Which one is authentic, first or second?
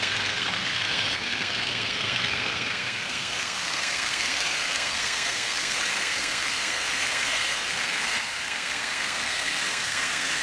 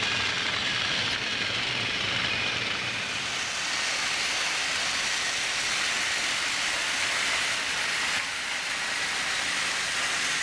second